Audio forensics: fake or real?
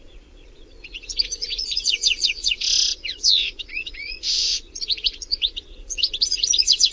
fake